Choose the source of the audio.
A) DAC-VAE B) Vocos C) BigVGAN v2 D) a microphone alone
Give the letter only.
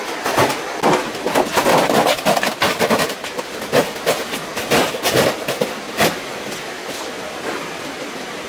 D